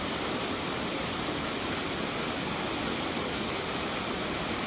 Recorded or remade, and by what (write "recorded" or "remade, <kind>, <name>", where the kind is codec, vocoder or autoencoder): recorded